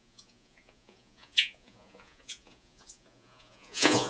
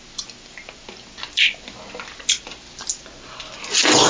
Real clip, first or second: second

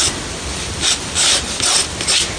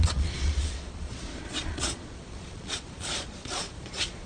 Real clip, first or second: first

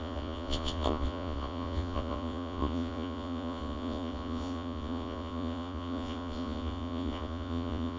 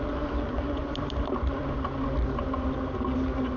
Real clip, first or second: second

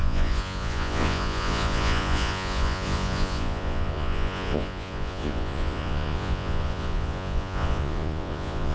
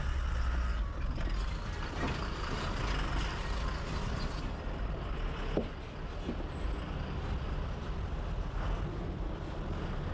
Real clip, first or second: second